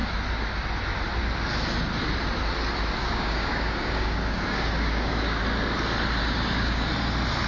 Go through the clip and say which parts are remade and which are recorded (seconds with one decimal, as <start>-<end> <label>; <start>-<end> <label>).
0.0-3.0 recorded; 3.0-5.4 remade; 5.4-6.2 recorded; 6.2-6.9 remade; 6.9-7.5 recorded